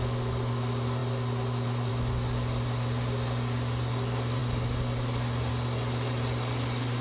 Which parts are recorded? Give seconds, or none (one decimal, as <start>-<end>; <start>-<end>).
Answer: 0.0-7.0